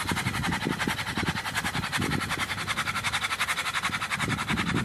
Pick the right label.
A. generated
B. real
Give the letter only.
B